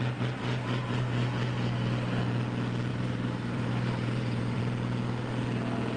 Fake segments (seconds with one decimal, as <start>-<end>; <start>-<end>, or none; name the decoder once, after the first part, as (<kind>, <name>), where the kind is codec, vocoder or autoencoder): 2.9-4.6 (vocoder, BigVGAN v2)